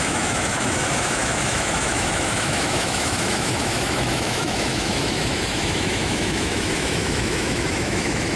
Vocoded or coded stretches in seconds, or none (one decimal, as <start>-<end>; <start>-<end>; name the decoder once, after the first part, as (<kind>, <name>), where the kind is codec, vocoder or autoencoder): 0.0-8.4 (autoencoder, DAC-VAE)